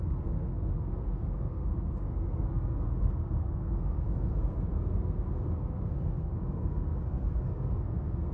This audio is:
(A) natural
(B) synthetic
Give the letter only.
B